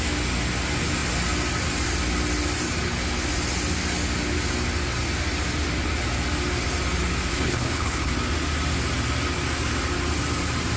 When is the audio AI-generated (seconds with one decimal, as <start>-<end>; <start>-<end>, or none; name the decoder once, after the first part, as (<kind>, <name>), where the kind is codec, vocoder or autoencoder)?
7.3-8.1 (codec, HILCodec)